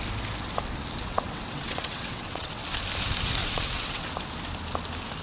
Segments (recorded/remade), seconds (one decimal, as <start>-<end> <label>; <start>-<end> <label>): 0.0-1.1 recorded; 1.1-2.6 remade; 2.6-3.4 recorded; 3.4-4.1 remade; 4.1-5.2 recorded